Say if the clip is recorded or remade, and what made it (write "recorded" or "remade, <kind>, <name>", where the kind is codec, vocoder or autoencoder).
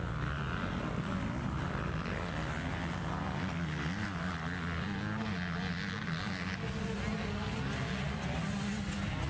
recorded